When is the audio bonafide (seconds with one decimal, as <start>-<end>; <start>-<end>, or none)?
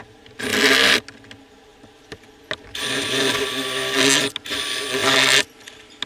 0.0-6.1